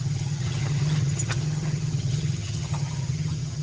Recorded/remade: remade